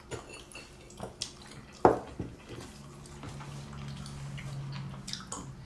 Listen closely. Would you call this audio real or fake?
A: real